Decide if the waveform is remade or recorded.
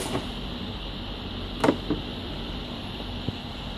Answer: recorded